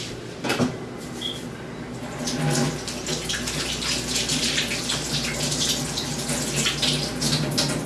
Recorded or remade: recorded